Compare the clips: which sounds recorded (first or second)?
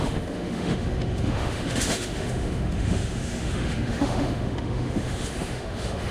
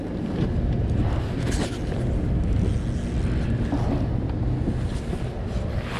second